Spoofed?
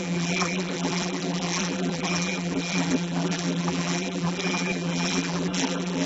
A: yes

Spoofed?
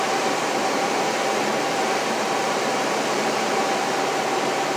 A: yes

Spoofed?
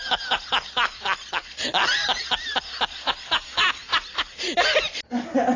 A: no